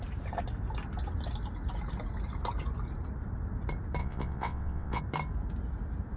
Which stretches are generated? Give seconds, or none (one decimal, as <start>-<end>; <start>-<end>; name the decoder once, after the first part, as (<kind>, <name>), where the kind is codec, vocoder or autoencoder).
4.0-5.0 (vocoder, WaveNeXt)